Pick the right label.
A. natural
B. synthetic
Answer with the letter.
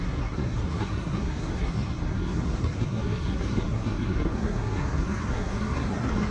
B